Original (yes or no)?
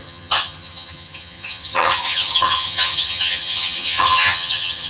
no